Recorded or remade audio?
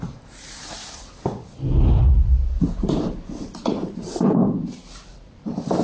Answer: remade